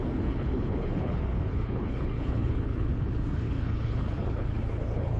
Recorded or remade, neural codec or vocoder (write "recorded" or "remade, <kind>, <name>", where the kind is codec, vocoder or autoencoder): remade, codec, HILCodec